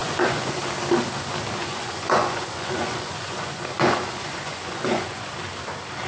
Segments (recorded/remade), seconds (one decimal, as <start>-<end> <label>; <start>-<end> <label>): 0.0-0.6 remade; 0.6-1.6 recorded; 1.6-5.3 remade; 5.3-6.1 recorded